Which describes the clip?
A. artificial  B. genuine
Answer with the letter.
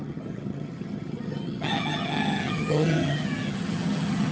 A